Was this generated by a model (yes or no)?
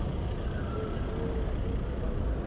no